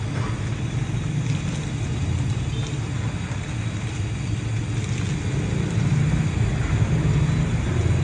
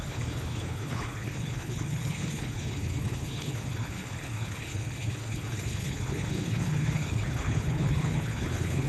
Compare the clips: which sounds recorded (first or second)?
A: first